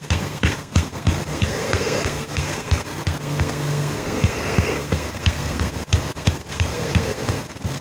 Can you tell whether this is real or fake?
fake